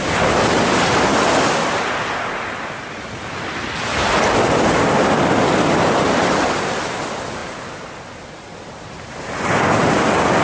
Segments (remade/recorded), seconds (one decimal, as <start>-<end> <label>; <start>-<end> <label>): 0.0-10.4 recorded

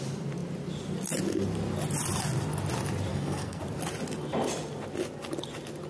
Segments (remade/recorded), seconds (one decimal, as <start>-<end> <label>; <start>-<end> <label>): 0.0-3.1 recorded; 3.1-3.6 remade; 3.6-5.9 recorded

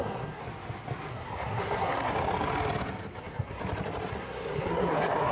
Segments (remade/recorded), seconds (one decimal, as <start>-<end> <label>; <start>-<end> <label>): 0.0-0.4 remade; 0.4-1.1 recorded; 1.1-2.1 remade; 2.1-3.2 recorded; 3.2-3.6 remade; 3.6-4.1 recorded; 4.1-5.3 remade

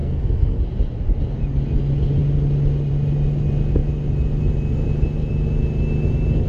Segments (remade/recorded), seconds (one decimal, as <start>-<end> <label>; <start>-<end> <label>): 0.0-0.6 remade; 0.6-6.5 recorded